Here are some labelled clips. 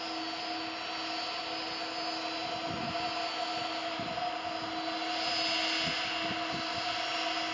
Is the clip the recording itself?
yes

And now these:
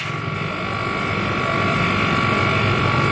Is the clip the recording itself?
yes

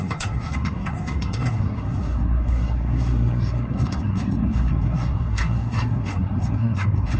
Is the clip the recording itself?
no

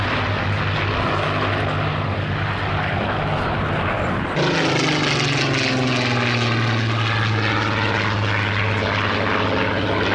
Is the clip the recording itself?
yes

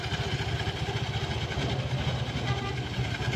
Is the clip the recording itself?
yes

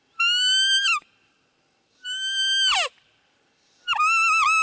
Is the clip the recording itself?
yes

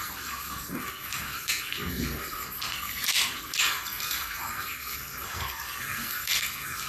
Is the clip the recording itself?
no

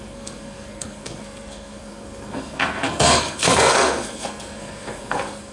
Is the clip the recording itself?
no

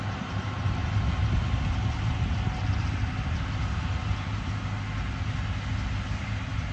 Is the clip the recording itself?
yes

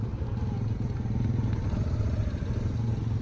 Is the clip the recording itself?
yes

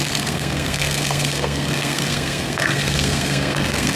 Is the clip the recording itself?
no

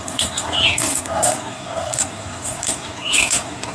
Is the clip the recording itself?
no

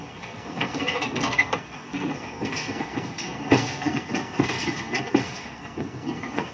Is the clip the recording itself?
no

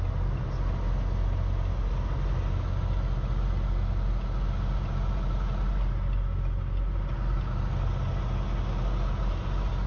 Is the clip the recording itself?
yes